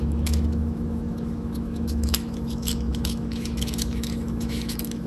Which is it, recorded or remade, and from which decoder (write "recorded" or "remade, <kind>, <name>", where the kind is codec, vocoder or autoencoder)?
remade, autoencoder, DAC-VAE